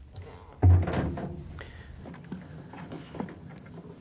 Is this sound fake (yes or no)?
no